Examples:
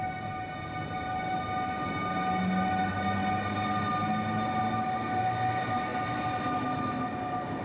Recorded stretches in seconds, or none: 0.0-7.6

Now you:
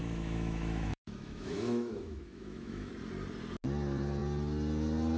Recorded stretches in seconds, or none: 2.9-5.2